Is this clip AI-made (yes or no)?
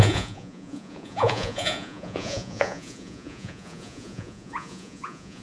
yes